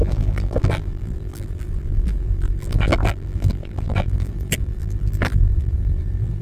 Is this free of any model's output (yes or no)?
no